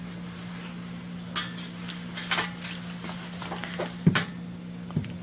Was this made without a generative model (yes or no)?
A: yes